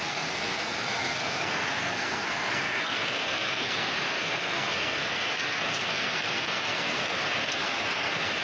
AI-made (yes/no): yes